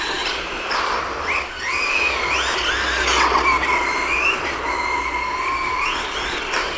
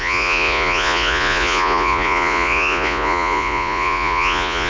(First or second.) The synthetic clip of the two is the second